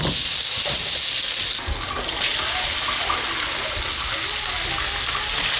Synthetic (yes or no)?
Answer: no